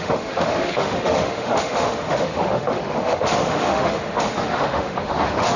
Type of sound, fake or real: fake